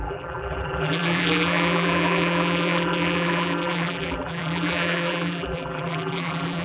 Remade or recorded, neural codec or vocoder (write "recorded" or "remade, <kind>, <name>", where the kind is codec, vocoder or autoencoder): remade, vocoder, BigVGAN v2